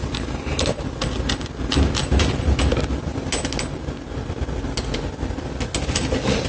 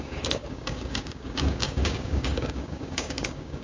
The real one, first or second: first